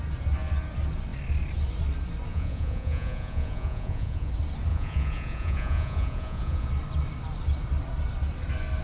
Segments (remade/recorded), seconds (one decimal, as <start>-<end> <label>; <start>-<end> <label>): 0.0-2.3 recorded; 2.3-4.3 remade; 4.3-4.7 recorded; 4.7-6.7 remade; 6.7-8.8 recorded